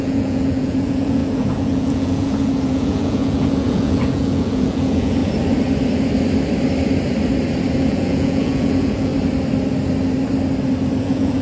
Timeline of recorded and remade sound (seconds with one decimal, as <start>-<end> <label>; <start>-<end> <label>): 0.0-5.2 remade; 5.2-7.9 recorded; 7.9-9.1 remade; 9.1-11.0 recorded; 11.0-11.4 remade